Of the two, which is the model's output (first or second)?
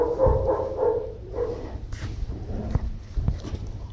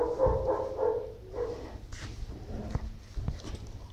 first